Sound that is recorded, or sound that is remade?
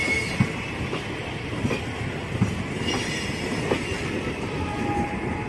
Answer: recorded